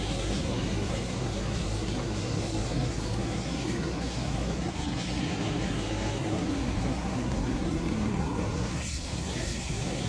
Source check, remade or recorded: remade